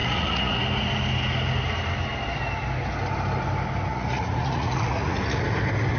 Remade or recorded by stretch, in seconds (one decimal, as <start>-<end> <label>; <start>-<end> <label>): 0.0-0.6 remade; 0.6-3.9 recorded; 3.9-5.4 remade; 5.4-6.0 recorded